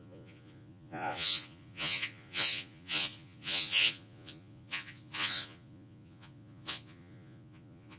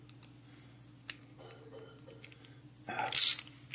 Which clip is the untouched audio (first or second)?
second